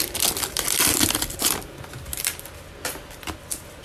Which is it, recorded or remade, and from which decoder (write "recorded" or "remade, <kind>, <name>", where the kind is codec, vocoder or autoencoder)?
recorded